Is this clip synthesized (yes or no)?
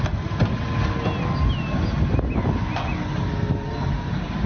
no